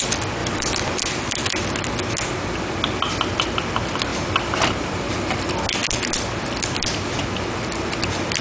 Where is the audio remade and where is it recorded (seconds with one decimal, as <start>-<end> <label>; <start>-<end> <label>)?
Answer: 0.0-0.4 recorded; 0.4-1.0 remade; 1.0-4.1 recorded; 4.1-5.1 remade; 5.1-8.4 recorded